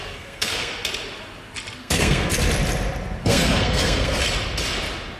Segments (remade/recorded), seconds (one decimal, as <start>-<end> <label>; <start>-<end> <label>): 0.0-0.7 remade; 0.7-1.8 recorded; 1.8-2.3 remade; 2.3-3.2 recorded; 3.2-4.2 remade; 4.2-5.2 recorded